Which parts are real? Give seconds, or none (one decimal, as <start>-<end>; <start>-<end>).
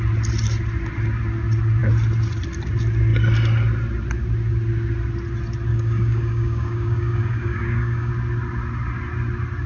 0.0-5.7; 8.1-9.7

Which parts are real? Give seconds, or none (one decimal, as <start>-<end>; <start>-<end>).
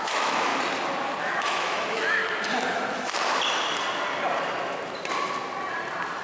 0.5-1.2; 2.2-6.2